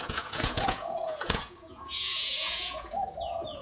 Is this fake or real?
fake